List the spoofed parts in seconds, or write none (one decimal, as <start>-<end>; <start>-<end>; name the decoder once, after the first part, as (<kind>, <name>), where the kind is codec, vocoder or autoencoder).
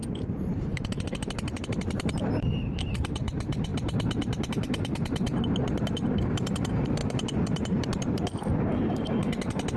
0.0-3.7 (vocoder, BigVGAN v2); 4.5-9.2